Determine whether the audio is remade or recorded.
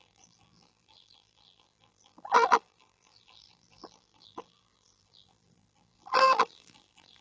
remade